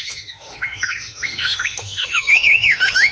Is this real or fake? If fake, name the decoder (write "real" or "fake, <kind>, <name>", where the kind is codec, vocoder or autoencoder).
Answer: fake, autoencoder, DAC-VAE